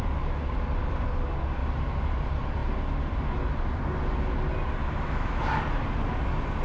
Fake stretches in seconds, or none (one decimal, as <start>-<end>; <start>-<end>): 4.8-5.4